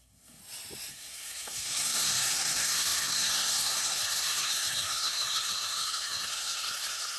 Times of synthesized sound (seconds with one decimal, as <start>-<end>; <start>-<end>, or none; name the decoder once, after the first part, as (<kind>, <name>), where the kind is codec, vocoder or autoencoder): 0.0-0.4 (codec, SNAC); 0.9-7.2